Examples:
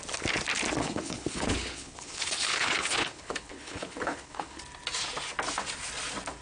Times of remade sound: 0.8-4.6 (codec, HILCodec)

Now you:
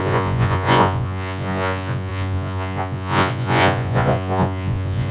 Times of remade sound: 0.0-5.1 (vocoder, Vocos)

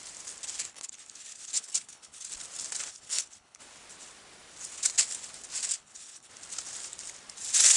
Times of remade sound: 0.7-2.3 (codec, HILCodec); 2.9-3.6; 5.7-6.3